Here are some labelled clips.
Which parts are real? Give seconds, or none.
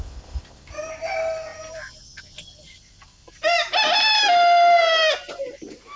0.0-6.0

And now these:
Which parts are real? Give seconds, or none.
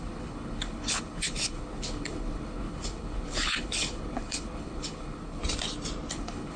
5.4-6.1